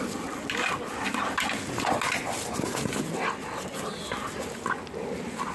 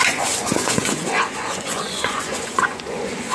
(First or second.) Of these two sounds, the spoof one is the second